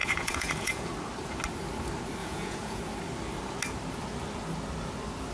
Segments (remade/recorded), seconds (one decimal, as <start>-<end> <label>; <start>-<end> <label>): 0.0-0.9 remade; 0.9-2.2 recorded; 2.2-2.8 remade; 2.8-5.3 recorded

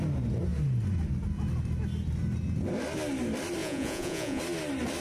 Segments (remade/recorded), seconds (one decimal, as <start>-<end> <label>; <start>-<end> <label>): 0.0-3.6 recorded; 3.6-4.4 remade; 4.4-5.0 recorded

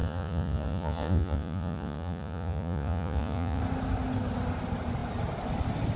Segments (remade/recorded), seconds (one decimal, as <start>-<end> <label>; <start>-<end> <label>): 0.0-3.6 remade; 3.6-6.0 recorded

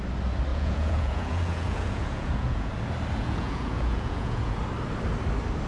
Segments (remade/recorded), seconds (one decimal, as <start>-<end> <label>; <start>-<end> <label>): 0.0-0.5 recorded; 0.5-2.7 remade; 2.7-3.2 recorded; 3.2-4.6 remade; 4.6-5.7 recorded

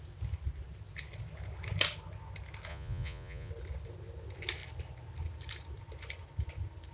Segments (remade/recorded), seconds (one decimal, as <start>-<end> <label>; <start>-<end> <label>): 0.0-2.7 recorded; 2.7-3.5 remade; 3.5-6.9 recorded